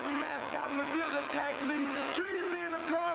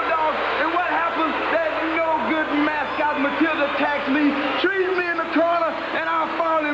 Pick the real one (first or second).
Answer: second